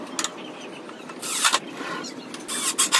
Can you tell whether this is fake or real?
real